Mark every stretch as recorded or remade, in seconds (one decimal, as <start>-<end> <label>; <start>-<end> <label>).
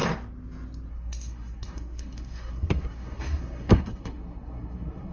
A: 0.0-0.9 recorded; 0.9-5.1 remade